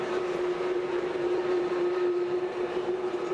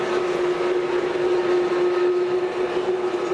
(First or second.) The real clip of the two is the second